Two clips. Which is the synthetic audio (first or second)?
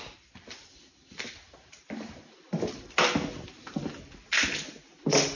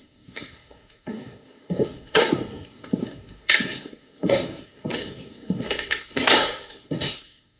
second